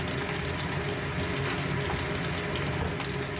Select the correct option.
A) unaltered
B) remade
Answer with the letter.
A